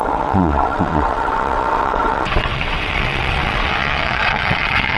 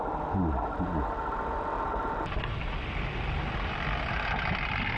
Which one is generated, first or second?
first